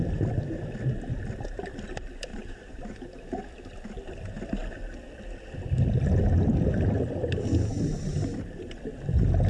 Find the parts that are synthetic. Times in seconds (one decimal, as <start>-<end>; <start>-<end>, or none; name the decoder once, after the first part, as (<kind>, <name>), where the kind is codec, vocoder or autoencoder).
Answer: 2.3-3.3 (vocoder, BigVGAN v2)